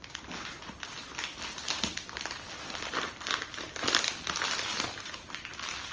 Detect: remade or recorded recorded